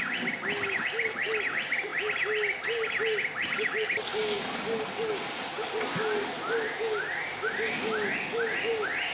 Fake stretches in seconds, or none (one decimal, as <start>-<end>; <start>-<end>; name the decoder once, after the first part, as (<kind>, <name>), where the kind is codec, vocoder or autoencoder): none